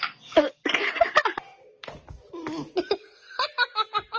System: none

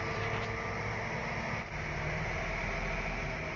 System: none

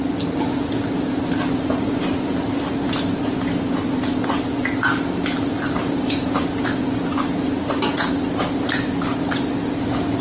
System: none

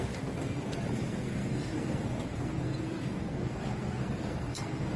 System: codec, SNAC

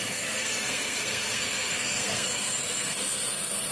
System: codec, SNAC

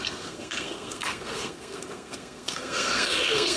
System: codec, SNAC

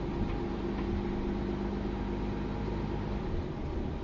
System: none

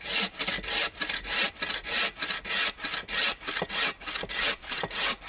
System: none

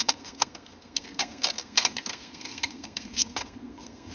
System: codec, SNAC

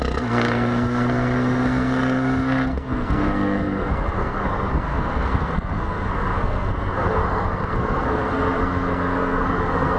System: codec, SNAC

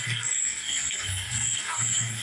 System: codec, SNAC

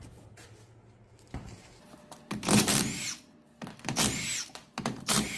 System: none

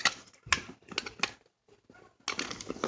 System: none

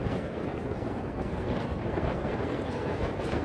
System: codec, SNAC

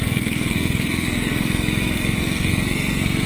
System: codec, SNAC